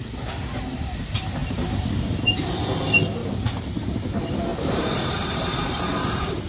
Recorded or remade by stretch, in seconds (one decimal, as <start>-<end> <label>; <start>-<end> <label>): 0.0-1.4 recorded; 1.4-1.9 remade; 1.9-3.2 recorded; 3.2-4.1 remade; 4.1-4.5 recorded; 4.5-6.5 remade